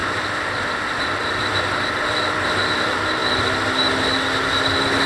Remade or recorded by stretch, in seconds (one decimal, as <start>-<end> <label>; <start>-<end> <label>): 0.0-5.1 recorded

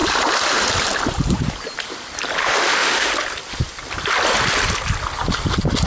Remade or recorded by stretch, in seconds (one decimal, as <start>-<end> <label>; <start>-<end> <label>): 0.0-2.4 recorded; 2.4-3.1 remade; 3.1-5.9 recorded

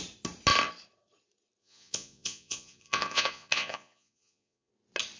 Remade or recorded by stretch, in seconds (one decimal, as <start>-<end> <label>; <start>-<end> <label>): 0.0-1.6 recorded; 1.6-4.7 remade; 4.7-5.2 recorded

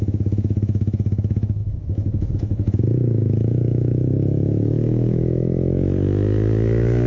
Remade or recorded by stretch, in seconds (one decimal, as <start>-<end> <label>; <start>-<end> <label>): 0.0-7.1 remade